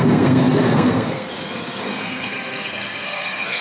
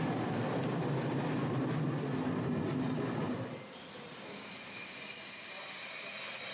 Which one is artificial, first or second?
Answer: first